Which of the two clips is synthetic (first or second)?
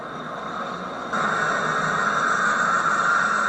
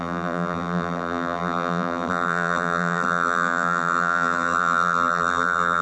second